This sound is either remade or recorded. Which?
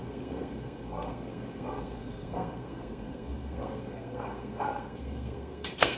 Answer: remade